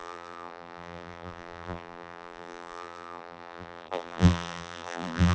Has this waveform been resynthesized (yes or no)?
yes